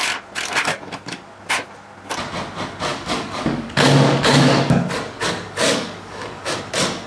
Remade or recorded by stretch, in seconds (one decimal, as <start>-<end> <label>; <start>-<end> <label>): 0.0-0.7 recorded; 0.7-1.4 remade; 1.4-2.9 recorded; 2.9-6.6 remade; 6.6-7.1 recorded

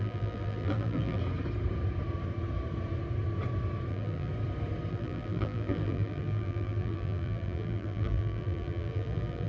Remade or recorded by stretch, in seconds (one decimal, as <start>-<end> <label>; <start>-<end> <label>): 0.0-1.2 remade; 1.2-3.9 recorded; 3.9-4.3 remade; 4.3-4.9 recorded; 4.9-9.5 remade

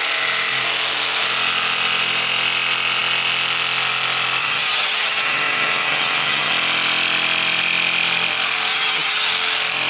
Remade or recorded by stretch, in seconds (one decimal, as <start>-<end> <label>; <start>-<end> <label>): 0.0-4.4 recorded; 4.4-6.5 remade; 6.5-8.7 recorded; 8.7-9.3 remade; 9.3-9.9 recorded

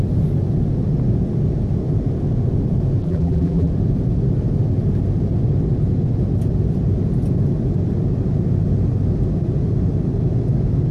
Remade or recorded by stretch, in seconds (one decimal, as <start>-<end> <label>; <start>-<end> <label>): 0.0-3.0 recorded; 3.0-3.7 remade; 3.7-10.9 recorded

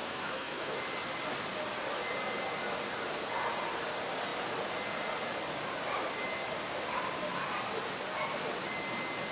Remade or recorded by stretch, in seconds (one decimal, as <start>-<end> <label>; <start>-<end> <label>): 0.0-0.8 remade; 0.8-9.3 recorded

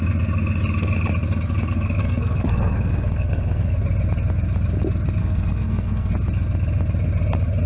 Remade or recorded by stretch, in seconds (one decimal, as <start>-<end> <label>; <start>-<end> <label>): 0.0-2.0 recorded; 2.0-3.8 remade; 3.8-5.2 recorded; 5.2-6.1 remade; 6.1-7.7 recorded

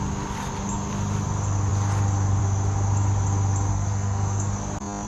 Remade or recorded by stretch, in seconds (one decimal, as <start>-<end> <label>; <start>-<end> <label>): 0.0-3.7 recorded; 3.7-4.5 remade; 4.5-5.1 recorded